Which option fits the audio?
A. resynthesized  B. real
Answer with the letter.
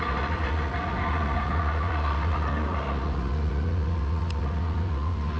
A